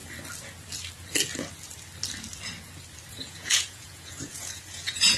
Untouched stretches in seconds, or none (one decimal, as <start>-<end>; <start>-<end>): 0.0-3.1